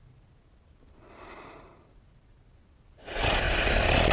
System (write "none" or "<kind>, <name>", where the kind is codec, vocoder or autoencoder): none